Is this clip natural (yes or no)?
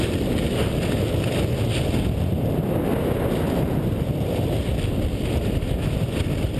yes